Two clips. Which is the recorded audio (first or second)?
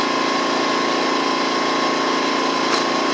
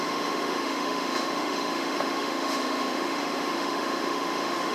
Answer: first